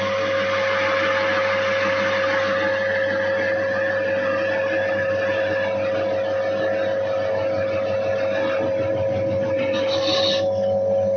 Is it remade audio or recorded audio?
recorded